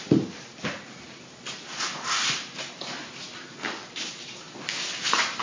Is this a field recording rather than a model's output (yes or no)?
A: yes